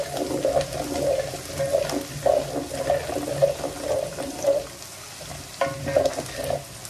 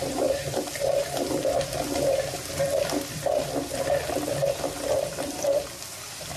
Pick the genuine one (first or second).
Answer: first